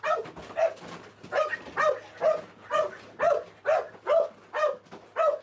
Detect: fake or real real